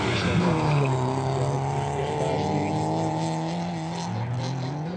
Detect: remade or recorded recorded